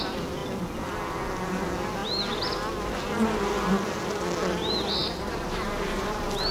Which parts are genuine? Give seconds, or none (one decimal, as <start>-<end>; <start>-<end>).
0.0-5.0